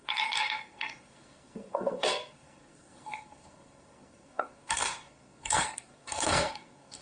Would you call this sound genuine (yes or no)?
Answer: no